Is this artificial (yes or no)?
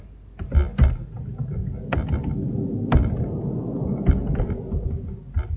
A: no